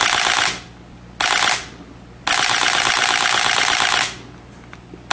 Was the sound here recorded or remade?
recorded